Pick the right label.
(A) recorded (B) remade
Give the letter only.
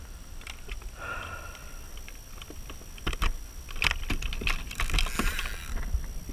A